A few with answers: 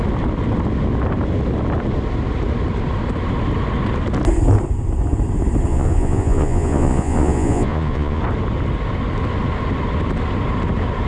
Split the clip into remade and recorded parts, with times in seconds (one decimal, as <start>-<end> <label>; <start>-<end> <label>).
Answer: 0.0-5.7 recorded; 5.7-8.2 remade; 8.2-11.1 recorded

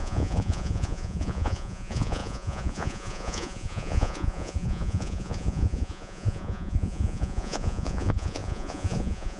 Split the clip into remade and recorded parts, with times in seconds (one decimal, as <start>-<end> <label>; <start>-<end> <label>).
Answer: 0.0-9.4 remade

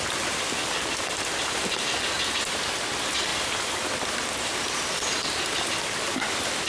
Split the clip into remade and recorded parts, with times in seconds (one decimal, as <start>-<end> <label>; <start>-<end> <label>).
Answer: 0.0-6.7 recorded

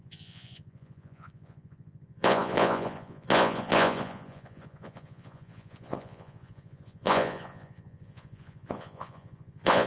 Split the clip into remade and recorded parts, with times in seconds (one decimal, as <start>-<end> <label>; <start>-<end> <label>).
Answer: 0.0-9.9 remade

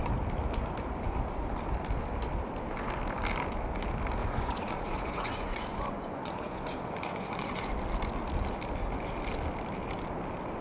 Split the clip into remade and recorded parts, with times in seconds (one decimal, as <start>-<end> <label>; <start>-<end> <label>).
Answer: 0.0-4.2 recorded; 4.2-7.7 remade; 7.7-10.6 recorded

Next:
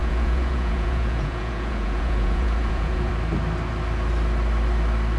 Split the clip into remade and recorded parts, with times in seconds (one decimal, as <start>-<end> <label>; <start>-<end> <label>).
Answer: 0.0-3.1 remade; 3.1-5.2 recorded

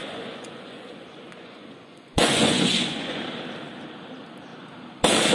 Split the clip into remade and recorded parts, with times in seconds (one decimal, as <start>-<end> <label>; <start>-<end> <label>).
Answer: 0.0-3.2 remade; 3.2-5.3 recorded

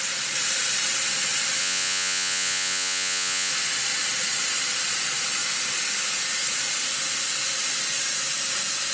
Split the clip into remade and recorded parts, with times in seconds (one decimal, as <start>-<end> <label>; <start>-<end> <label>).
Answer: 0.0-1.6 recorded; 1.6-3.5 remade; 3.5-8.9 recorded